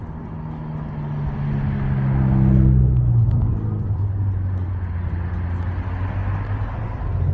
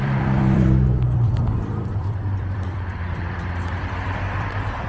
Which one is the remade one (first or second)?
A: second